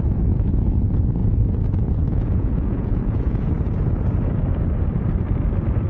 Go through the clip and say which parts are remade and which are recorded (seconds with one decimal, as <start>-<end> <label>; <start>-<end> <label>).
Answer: 0.0-1.2 recorded; 1.2-3.5 remade; 3.5-5.9 recorded